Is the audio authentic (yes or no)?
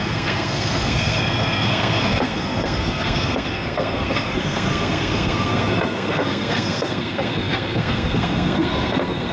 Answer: no